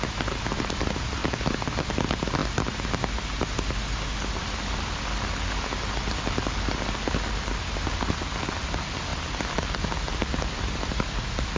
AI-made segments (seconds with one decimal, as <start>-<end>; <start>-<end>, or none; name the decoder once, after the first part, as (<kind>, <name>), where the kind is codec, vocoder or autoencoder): none